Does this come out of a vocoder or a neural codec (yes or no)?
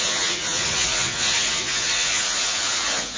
yes